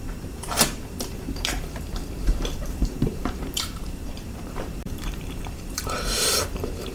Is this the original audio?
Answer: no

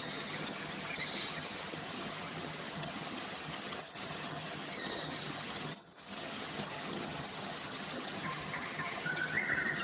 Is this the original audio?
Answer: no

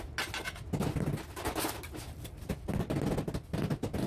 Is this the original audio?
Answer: yes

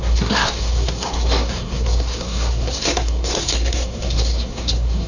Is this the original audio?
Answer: no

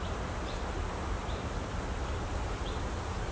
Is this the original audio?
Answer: yes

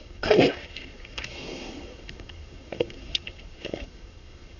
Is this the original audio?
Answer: no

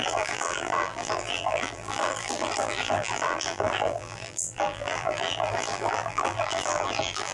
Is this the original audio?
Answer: no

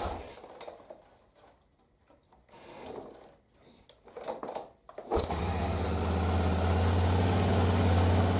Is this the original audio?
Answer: yes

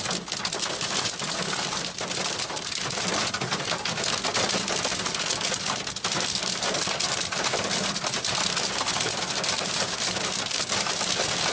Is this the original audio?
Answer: yes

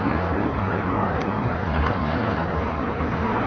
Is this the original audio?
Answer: no